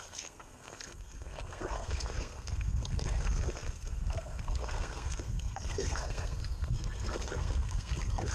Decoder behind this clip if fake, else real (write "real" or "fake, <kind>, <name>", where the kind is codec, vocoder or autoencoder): fake, codec, SNAC